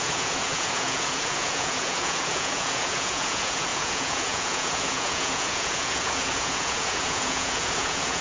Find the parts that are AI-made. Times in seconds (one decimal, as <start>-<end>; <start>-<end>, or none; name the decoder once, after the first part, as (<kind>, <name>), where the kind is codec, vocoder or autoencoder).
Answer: 0.0-8.2 (vocoder, Vocos)